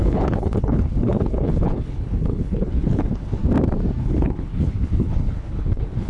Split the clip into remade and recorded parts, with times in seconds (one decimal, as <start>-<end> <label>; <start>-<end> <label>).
0.0-3.4 remade; 3.4-4.0 recorded; 4.0-6.1 remade